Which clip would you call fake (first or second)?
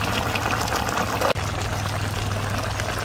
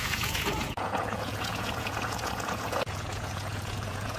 second